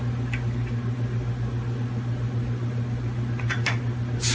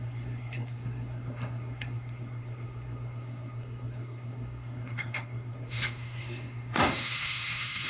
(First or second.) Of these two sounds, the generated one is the second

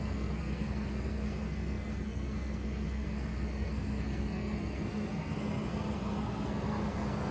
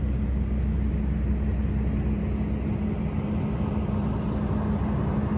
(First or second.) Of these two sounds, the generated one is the first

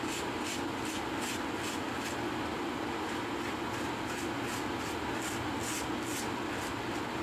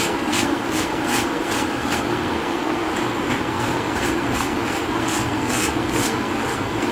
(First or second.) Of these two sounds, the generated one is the second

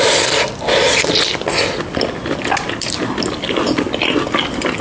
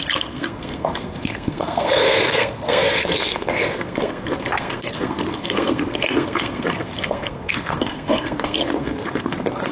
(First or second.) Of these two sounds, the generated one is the second